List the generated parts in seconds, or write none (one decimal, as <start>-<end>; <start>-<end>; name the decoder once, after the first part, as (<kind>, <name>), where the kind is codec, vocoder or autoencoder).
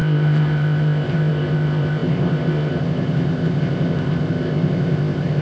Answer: 0.0-5.4 (codec, ZipCodec)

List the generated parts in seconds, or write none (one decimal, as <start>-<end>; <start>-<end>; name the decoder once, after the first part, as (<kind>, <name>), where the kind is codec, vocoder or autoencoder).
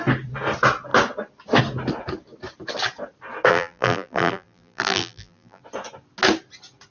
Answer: 3.5-5.6 (vocoder, BigVGAN v2)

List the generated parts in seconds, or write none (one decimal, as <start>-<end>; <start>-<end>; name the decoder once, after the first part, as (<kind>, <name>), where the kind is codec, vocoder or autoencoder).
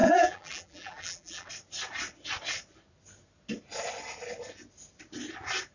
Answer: 0.0-1.5 (vocoder, BigVGAN v2)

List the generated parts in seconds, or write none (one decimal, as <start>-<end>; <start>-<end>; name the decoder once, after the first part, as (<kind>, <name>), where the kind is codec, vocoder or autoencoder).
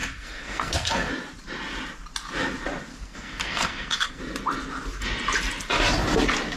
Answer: 0.0-1.1 (codec, SNAC); 2.9-4.2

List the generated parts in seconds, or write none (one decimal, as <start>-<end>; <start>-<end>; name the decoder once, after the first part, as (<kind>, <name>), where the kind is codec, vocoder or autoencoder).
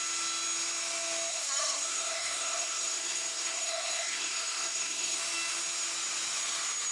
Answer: 1.3-5.2 (codec, SNAC)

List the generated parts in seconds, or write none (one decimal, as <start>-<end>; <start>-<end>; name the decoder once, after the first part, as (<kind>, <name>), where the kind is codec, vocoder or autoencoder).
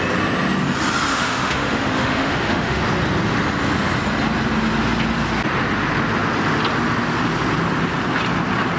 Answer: 1.1-2.8 (autoencoder, DAC-VAE)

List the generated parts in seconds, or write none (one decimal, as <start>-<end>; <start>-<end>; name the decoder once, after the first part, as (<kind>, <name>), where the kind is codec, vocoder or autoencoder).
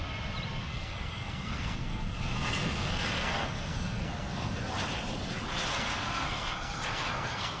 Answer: 0.6-4.6 (codec, SNAC); 5.7-7.6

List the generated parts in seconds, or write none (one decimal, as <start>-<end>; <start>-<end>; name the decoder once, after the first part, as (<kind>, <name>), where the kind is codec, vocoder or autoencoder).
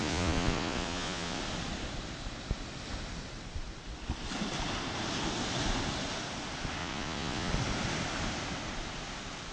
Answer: 0.0-1.4 (vocoder, Vocos); 6.8-7.5